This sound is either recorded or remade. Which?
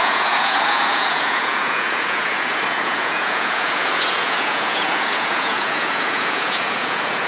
remade